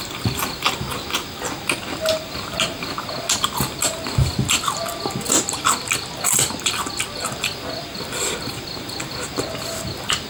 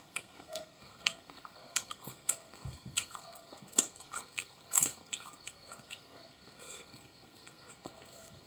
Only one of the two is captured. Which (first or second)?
first